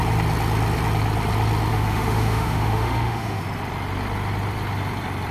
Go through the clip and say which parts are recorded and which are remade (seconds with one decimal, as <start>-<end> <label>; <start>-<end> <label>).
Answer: 0.0-1.7 recorded; 1.7-3.4 remade; 3.4-5.3 recorded

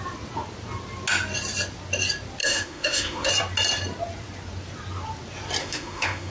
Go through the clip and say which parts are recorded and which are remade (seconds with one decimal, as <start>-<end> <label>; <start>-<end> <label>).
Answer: 0.0-2.4 recorded; 2.4-3.3 remade; 3.3-5.6 recorded; 5.6-6.3 remade

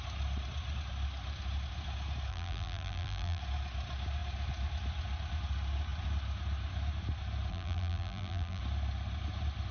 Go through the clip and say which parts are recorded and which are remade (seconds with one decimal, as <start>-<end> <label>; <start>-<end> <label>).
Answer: 0.0-2.3 recorded; 2.3-3.4 remade; 3.4-7.5 recorded; 7.5-8.6 remade; 8.6-9.7 recorded

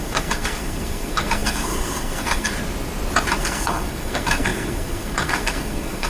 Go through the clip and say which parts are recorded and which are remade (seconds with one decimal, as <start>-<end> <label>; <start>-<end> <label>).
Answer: 0.0-2.5 remade; 2.5-3.4 recorded; 3.4-6.1 remade

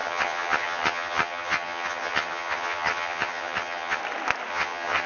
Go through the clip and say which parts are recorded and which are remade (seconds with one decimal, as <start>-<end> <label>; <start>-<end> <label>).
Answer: 0.0-4.0 remade; 4.0-4.5 recorded; 4.5-5.1 remade

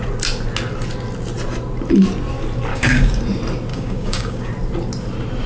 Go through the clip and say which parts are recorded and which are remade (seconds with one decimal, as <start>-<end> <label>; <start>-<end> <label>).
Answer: 0.0-2.7 recorded; 2.7-3.2 remade; 3.2-3.7 recorded; 3.7-4.5 remade; 4.5-5.5 recorded